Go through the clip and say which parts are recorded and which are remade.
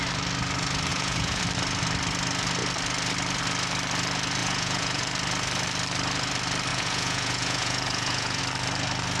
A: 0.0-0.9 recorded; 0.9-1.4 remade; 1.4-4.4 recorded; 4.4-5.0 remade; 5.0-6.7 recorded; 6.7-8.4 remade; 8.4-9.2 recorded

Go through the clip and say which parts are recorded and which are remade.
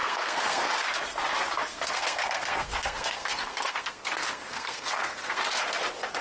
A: 0.0-0.6 remade; 0.6-1.7 recorded; 1.7-5.4 remade; 5.4-6.2 recorded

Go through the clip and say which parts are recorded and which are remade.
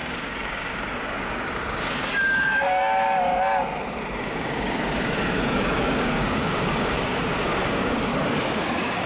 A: 0.0-3.3 remade; 3.3-4.2 recorded; 4.2-9.1 remade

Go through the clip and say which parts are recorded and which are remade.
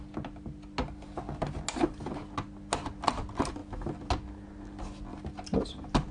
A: 0.0-6.1 recorded